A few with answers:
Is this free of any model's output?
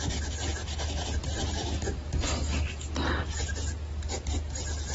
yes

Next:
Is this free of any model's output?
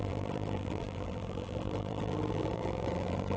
no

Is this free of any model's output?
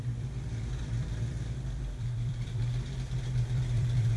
no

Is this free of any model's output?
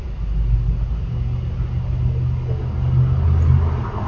yes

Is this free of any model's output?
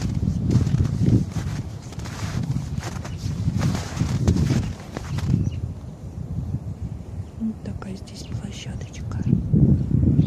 no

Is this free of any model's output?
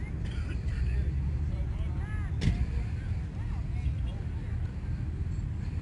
yes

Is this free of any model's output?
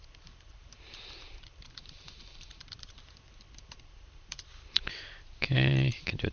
no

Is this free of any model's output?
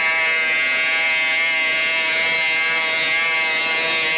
yes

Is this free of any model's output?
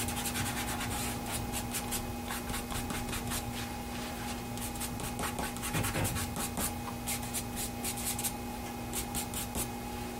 yes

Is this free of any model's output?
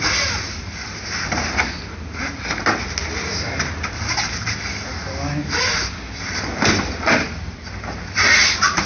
yes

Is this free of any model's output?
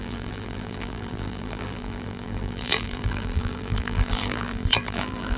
no